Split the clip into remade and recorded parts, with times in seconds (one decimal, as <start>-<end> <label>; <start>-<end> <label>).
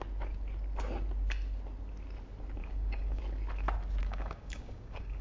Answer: 0.0-2.6 recorded; 2.6-3.2 remade; 3.2-4.0 recorded; 4.0-5.2 remade